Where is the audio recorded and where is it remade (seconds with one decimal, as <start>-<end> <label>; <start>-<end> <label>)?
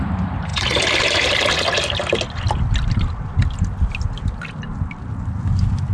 0.0-0.5 recorded; 0.5-1.3 remade; 1.3-5.9 recorded